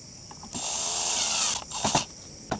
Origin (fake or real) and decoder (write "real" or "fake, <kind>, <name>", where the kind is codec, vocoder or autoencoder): real